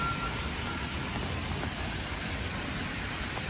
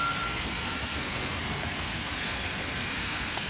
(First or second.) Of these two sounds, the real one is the first